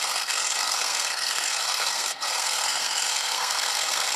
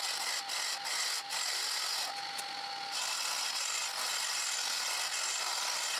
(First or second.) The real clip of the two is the second